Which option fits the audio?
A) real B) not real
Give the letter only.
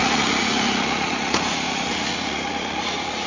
B